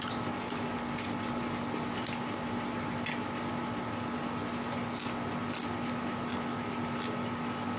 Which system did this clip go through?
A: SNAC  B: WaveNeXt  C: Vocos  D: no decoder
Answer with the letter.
D